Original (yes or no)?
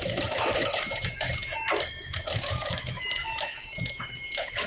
no